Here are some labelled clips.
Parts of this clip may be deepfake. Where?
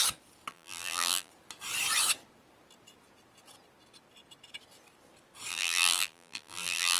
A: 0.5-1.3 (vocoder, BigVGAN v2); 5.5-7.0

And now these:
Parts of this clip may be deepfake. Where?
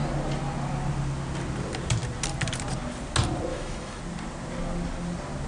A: 3.5-4.0 (autoencoder, DAC-VAE)